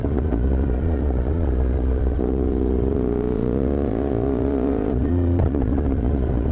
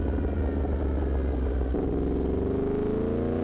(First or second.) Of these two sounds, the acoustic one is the second